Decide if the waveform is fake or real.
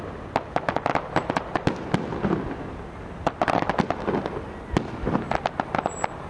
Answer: real